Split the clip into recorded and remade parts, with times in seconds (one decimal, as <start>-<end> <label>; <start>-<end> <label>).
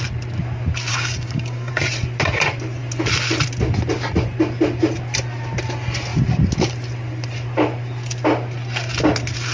0.0-0.9 recorded; 0.9-1.7 remade; 1.7-9.5 recorded